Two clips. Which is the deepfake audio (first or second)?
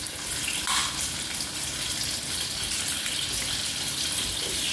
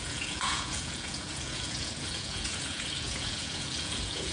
second